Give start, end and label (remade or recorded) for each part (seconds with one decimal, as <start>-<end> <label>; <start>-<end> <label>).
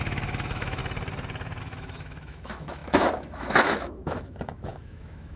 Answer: 0.0-0.8 remade; 0.8-1.6 recorded; 1.6-5.4 remade